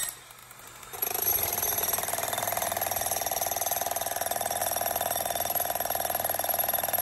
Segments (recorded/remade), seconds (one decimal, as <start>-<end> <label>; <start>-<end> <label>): 0.0-0.4 recorded; 0.4-4.6 remade; 4.6-7.0 recorded